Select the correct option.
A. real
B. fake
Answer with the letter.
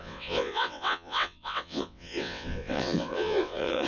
B